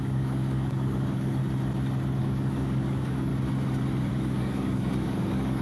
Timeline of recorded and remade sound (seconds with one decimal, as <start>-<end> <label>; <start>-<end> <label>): 0.0-1.4 remade; 1.4-2.2 recorded; 2.2-3.3 remade; 3.3-4.1 recorded; 4.1-5.6 remade